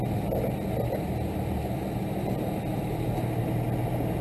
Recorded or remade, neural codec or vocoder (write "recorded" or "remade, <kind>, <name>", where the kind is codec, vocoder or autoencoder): recorded